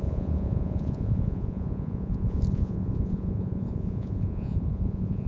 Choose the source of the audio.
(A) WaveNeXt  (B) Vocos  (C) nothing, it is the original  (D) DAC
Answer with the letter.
B